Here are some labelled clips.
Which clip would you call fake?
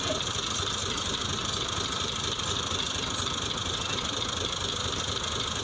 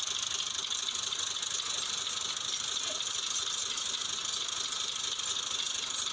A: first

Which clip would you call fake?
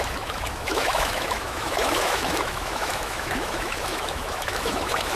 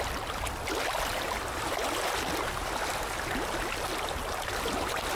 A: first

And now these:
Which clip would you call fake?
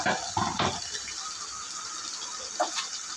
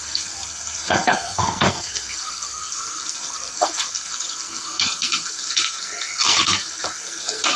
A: second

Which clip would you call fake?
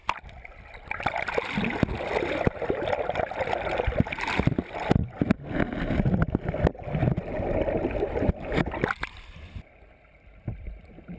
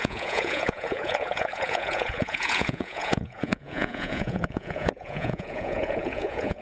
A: second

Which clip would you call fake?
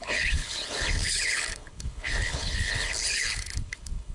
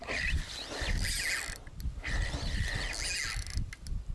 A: first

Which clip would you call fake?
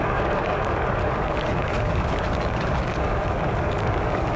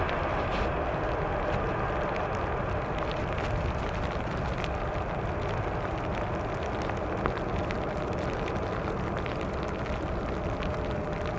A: first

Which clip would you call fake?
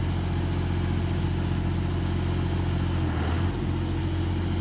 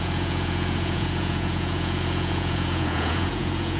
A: second